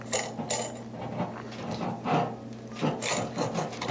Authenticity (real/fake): real